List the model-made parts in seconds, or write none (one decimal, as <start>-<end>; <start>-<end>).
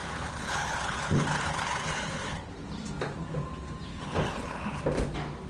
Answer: 0.0-2.5; 3.9-4.8